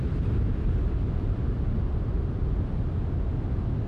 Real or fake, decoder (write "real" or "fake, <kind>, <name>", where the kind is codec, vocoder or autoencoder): real